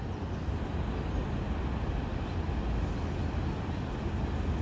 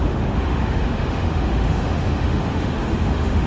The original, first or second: first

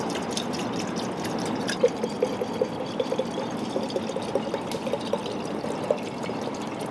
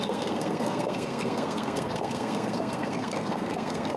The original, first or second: first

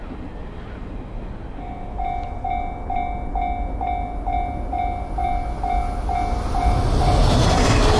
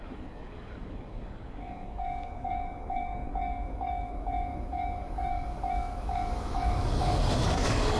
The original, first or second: first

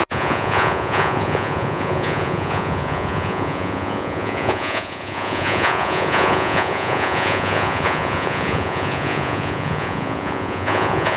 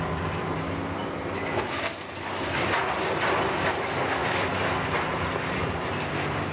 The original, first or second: second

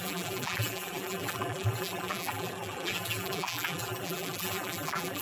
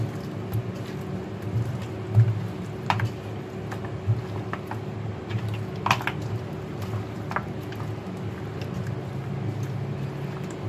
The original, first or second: second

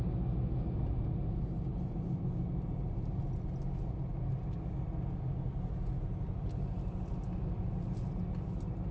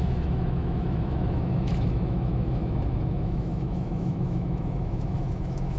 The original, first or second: first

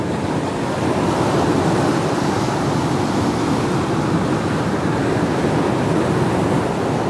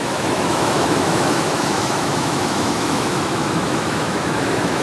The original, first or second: first